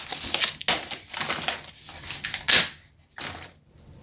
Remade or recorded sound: recorded